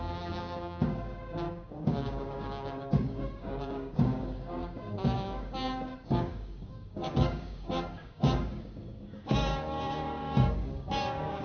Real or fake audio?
fake